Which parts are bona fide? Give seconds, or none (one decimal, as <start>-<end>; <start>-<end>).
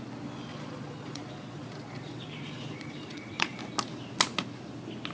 0.0-0.5; 3.6-5.1